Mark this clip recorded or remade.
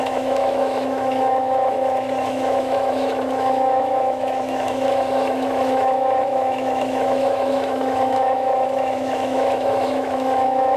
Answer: remade